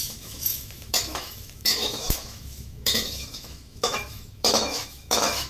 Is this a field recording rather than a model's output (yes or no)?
no